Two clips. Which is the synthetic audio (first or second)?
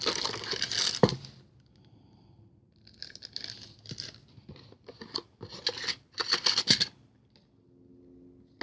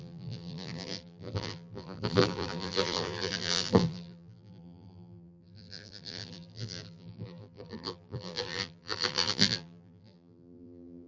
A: second